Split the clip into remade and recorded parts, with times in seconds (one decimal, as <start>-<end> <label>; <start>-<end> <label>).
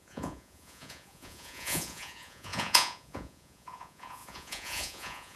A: 0.0-5.4 remade